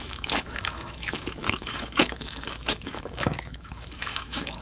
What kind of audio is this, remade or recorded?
remade